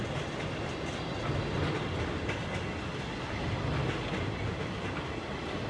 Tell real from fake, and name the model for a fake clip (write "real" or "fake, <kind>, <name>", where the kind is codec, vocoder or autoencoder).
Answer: real